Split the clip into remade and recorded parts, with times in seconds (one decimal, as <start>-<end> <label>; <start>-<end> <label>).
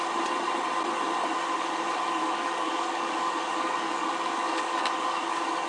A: 0.0-2.2 recorded; 2.2-5.7 remade